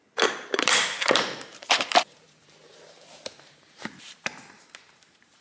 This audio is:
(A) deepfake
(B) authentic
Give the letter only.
A